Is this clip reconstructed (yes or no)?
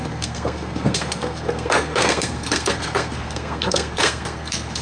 yes